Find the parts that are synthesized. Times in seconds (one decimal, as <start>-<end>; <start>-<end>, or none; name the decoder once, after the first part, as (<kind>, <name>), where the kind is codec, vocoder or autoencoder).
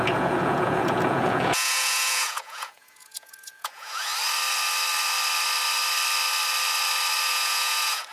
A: 0.0-4.1 (vocoder, Vocos); 7.3-8.1